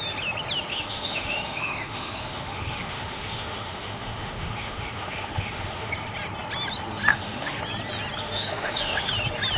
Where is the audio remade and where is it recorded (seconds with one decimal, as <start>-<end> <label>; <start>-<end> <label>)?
0.0-0.7 recorded; 0.7-5.9 remade; 5.9-7.1 recorded; 7.1-7.6 remade; 7.6-8.2 recorded; 8.2-9.1 remade; 9.1-9.6 recorded